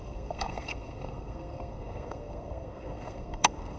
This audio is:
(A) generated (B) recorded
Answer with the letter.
A